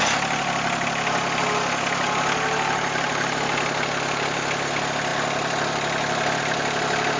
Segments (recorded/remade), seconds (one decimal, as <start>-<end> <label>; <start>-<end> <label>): 0.0-7.2 recorded